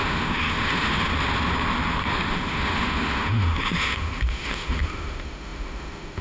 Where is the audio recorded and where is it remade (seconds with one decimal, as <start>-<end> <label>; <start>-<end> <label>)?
0.0-1.1 remade; 1.1-2.3 recorded; 2.3-6.2 remade